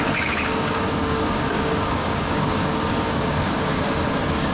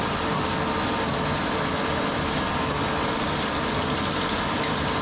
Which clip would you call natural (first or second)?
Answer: second